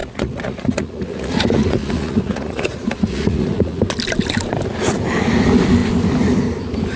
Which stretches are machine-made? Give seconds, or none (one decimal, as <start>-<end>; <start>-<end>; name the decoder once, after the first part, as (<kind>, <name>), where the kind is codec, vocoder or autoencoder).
0.0-3.8 (vocoder, Vocos)